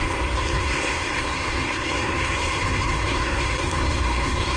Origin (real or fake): fake